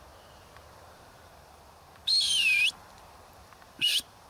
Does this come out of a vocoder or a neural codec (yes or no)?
yes